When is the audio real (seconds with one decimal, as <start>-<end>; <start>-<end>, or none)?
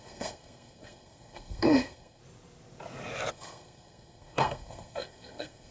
2.2-3.3